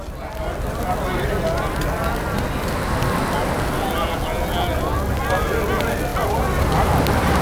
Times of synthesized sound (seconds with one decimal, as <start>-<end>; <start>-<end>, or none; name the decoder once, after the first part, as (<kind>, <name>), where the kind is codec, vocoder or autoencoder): none